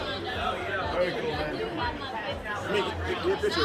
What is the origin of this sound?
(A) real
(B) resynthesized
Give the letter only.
B